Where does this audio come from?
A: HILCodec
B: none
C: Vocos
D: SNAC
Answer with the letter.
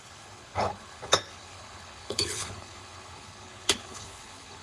A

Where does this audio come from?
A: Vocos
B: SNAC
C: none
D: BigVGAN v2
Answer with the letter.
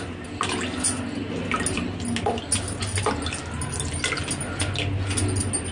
C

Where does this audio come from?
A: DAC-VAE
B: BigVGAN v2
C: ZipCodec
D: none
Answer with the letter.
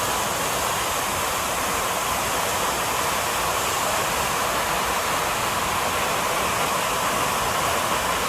D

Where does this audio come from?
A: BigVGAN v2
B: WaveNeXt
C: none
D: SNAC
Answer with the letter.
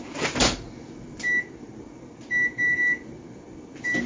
C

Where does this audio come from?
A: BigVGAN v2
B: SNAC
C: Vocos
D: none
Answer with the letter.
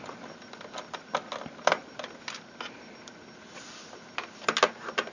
D